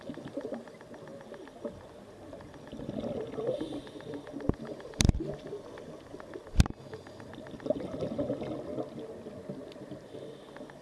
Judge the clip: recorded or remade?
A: recorded